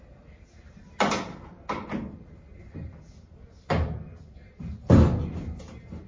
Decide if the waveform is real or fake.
real